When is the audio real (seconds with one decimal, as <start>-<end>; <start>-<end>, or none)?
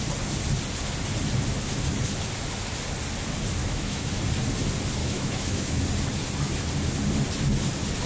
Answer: 0.0-3.6; 4.1-5.0; 5.8-8.1